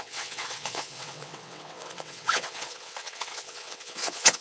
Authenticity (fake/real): fake